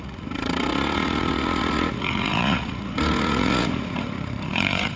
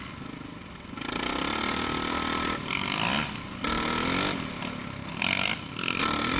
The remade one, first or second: first